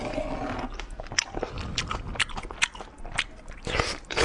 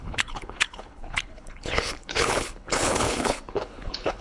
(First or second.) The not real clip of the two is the second